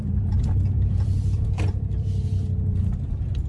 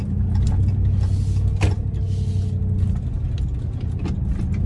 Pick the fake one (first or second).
first